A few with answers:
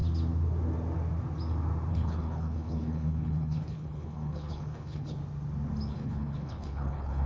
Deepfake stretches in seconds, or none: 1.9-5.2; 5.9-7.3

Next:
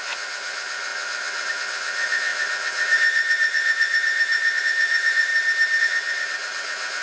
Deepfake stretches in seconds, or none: 0.0-5.3; 5.8-7.0

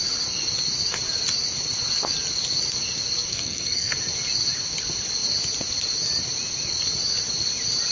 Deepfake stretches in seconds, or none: 3.3-3.9

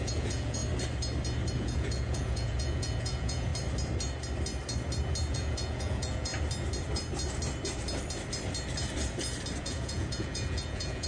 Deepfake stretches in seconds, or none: 0.0-0.6; 1.5-3.5; 5.3-6.3; 9.6-11.1

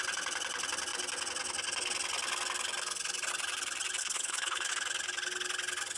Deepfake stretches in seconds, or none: 4.0-4.7